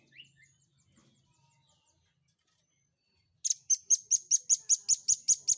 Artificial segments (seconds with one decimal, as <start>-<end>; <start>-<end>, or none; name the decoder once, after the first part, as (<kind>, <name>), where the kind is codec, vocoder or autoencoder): none